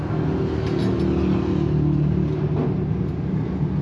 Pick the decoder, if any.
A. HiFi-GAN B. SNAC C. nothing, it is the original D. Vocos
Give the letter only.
C